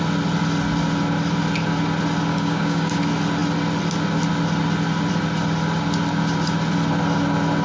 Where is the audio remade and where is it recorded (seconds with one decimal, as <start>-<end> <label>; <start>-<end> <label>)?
0.0-2.3 recorded; 2.3-3.0 remade; 3.0-7.6 recorded